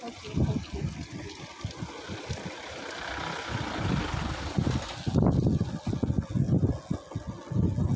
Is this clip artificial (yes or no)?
no